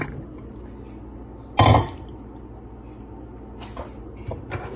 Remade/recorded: recorded